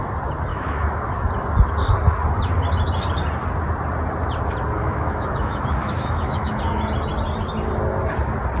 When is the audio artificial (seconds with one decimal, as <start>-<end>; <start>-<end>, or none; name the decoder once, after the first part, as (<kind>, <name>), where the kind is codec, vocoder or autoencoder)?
0.5-1.3 (autoencoder, DAC-VAE); 4.8-6.6